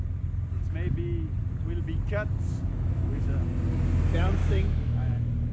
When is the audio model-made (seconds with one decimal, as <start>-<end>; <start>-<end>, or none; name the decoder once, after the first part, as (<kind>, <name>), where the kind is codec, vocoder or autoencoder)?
2.7-3.3 (autoencoder, DAC-VAE); 4.4-5.1